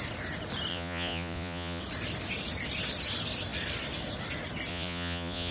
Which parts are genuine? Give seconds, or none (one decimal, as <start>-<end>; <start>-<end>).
0.0-0.7; 1.8-4.7